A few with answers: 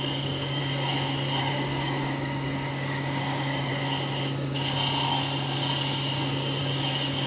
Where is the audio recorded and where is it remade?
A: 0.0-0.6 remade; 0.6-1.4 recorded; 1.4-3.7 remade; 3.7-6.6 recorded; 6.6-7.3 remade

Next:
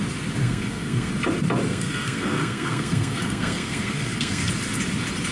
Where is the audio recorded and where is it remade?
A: 0.0-0.4 recorded; 0.4-1.1 remade; 1.1-1.7 recorded; 1.7-4.5 remade; 4.5-5.3 recorded

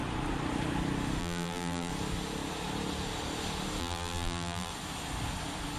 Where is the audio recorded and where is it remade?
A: 0.0-1.2 recorded; 1.2-1.9 remade; 1.9-3.8 recorded; 3.8-4.7 remade; 4.7-5.8 recorded

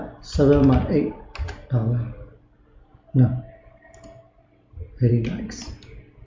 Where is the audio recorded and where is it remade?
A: 0.0-6.3 recorded

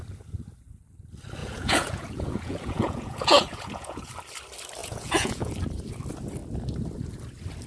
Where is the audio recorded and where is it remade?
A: 0.0-1.4 recorded; 1.4-4.1 remade; 4.1-4.8 recorded; 4.8-5.5 remade; 5.5-7.7 recorded

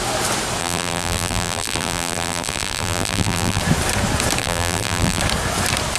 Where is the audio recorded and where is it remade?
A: 0.0-0.6 recorded; 0.6-3.6 remade; 3.6-4.4 recorded; 4.4-5.2 remade; 5.2-6.0 recorded

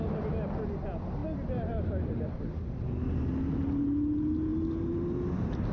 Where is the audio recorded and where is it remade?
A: 0.0-5.7 recorded

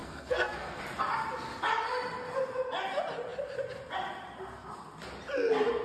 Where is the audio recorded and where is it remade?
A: 0.0-0.8 remade; 0.8-5.8 recorded